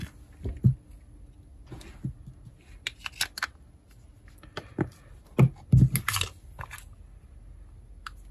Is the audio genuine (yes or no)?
yes